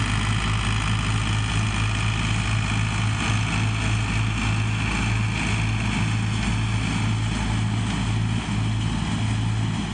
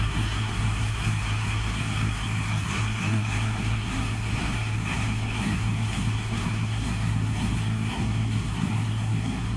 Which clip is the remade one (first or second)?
second